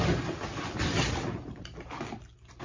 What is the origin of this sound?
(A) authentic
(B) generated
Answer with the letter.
A